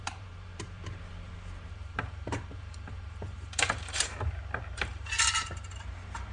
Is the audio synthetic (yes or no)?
yes